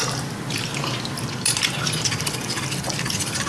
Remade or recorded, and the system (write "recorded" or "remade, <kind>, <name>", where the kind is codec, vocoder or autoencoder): recorded